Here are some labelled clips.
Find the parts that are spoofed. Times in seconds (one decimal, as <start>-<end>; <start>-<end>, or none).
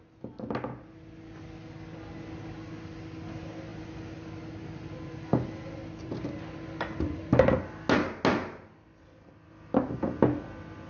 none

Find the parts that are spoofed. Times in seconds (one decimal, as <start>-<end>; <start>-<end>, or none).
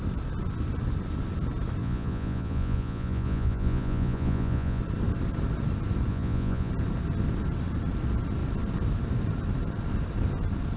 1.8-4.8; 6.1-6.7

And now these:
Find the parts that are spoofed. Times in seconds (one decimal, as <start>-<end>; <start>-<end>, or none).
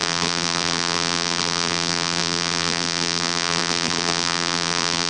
0.0-5.1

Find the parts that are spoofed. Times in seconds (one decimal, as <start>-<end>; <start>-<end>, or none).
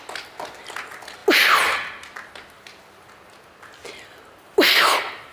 none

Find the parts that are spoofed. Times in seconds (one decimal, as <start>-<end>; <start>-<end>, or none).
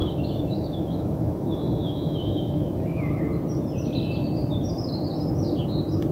0.0-3.2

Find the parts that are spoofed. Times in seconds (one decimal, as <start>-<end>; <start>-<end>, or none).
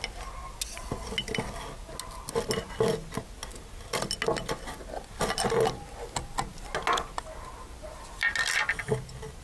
none